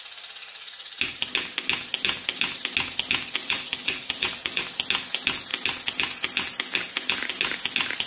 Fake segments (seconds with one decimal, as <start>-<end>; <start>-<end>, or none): 3.4-4.6